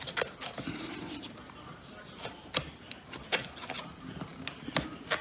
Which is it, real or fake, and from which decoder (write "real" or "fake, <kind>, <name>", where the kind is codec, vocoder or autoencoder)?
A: real